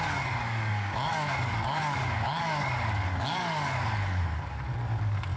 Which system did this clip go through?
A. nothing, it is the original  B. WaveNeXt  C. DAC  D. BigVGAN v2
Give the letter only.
C